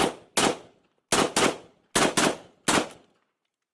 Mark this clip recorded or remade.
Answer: recorded